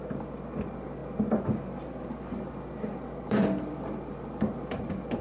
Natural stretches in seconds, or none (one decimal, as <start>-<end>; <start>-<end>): 0.0-5.2